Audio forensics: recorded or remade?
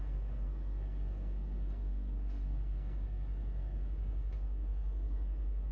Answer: remade